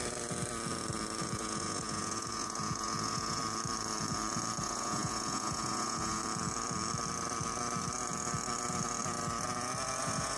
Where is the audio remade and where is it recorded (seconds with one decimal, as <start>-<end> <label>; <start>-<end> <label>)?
0.0-1.2 recorded; 1.2-3.4 remade; 3.4-4.6 recorded; 4.6-6.2 remade; 6.2-10.0 recorded; 10.0-10.4 remade